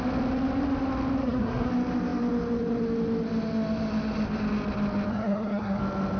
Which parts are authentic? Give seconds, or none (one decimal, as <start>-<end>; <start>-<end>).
0.0-1.2; 1.7-5.1; 5.8-6.2